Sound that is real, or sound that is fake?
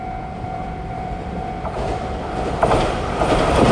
fake